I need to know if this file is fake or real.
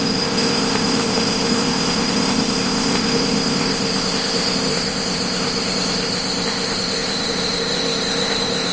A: fake